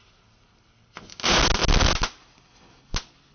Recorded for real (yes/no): yes